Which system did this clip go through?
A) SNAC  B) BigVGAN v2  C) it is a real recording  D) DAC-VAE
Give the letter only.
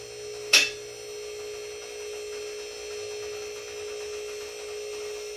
C